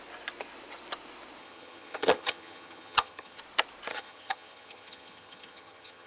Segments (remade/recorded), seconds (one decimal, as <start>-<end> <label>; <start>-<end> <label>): 0.0-1.4 recorded; 1.4-3.4 remade; 3.4-3.9 recorded; 3.9-6.1 remade